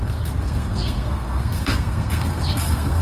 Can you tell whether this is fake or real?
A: fake